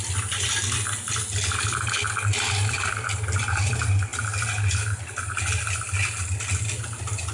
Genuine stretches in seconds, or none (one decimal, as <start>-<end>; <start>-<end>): 0.0-7.3